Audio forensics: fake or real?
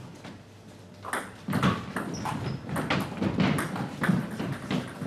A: real